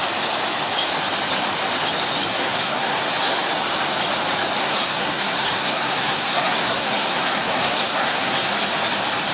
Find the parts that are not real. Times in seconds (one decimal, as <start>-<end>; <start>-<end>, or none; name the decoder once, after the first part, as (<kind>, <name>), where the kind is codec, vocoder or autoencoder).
2.3-3.5 (codec, SNAC); 4.6-8.5